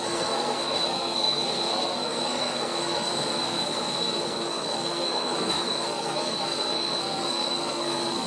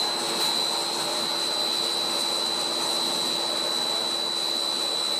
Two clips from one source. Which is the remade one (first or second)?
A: first